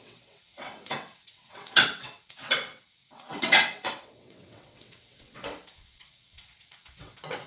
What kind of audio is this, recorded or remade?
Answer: remade